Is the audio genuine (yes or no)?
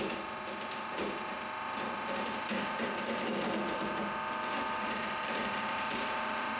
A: yes